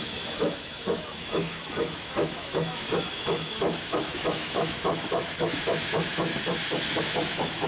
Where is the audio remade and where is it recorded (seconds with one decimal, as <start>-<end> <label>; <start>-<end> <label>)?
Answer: 0.0-6.3 remade; 6.3-7.0 recorded; 7.0-7.7 remade